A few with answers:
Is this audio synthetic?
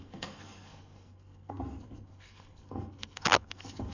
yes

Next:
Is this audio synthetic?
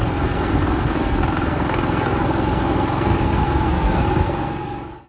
yes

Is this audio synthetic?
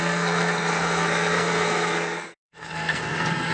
yes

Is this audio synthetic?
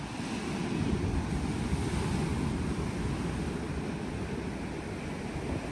no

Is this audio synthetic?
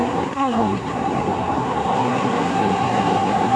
yes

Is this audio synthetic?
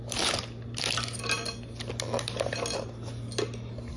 no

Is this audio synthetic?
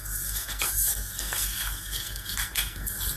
yes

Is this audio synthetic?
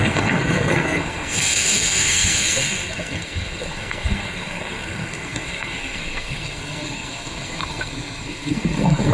yes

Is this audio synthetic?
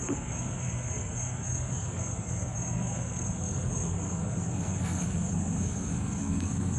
yes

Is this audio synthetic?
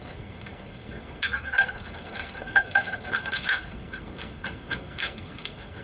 yes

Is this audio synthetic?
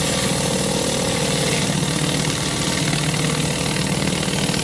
no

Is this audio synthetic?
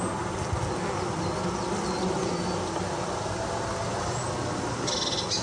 no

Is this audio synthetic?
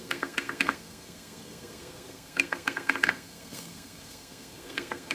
yes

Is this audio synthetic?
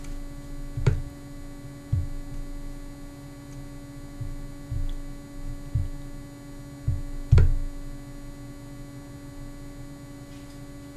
no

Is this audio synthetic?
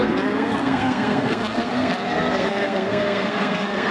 yes